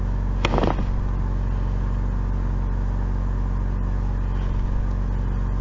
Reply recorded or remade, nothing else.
recorded